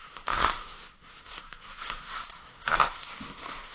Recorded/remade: remade